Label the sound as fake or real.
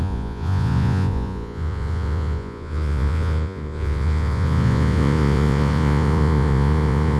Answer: fake